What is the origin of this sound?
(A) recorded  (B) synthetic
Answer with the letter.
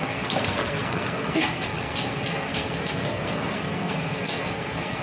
B